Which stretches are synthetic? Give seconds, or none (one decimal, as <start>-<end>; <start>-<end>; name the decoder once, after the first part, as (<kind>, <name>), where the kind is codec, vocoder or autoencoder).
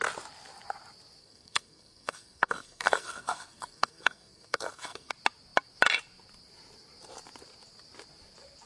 1.2-5.1 (codec, SNAC)